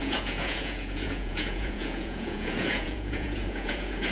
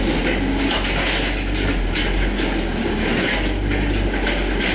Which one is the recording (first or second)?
second